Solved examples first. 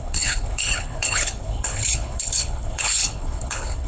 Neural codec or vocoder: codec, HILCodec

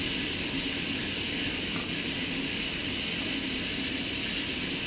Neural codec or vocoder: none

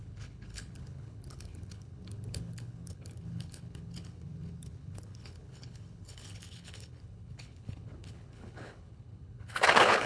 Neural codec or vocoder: codec, HILCodec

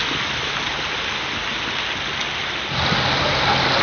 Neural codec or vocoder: none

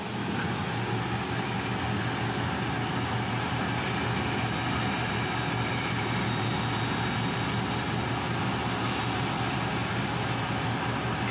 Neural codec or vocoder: none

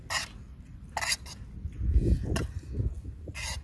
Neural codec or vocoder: none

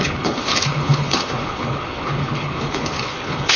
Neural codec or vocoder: codec, HILCodec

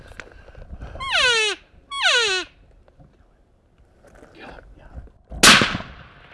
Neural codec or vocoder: none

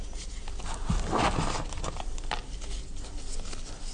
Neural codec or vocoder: none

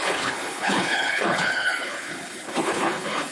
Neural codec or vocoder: codec, HILCodec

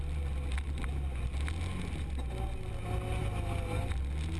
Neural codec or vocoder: none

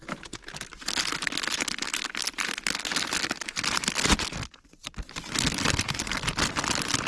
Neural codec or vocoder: none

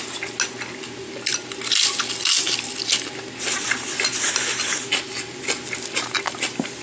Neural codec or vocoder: none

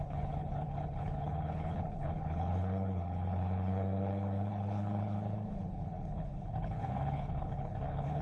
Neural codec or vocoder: codec, HILCodec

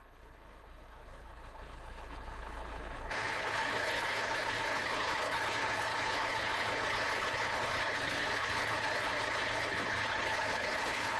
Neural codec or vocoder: codec, HILCodec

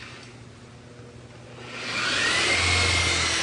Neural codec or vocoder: none